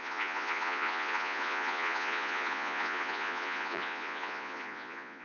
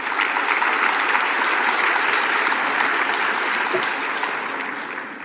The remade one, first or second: first